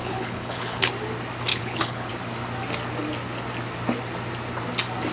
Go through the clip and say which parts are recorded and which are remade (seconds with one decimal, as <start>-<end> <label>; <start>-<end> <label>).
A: 0.0-0.9 remade; 0.9-1.5 recorded; 1.5-2.1 remade; 2.1-5.1 recorded